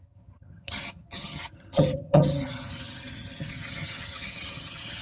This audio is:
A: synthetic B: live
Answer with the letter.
A